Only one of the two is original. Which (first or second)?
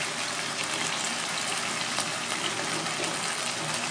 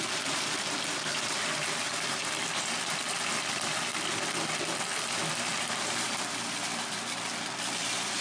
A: first